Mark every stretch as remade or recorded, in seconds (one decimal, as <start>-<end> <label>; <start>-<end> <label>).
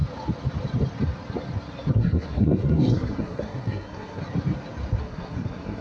0.0-1.9 recorded; 1.9-4.2 remade; 4.2-5.0 recorded; 5.0-5.8 remade